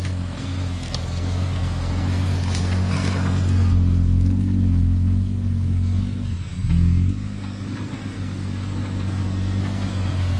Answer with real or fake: fake